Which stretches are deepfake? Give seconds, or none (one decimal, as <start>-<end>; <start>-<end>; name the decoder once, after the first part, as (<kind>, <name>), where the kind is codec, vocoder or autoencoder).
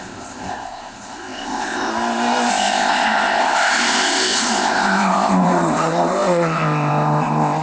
0.0-1.9 (codec, ZipCodec); 2.5-7.6